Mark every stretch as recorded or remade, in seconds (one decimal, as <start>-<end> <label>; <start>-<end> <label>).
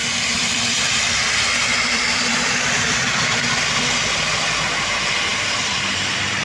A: 0.0-3.8 remade; 3.8-5.3 recorded; 5.3-6.4 remade